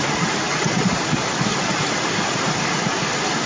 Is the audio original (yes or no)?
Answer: yes